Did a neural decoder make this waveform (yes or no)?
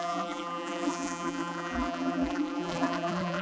yes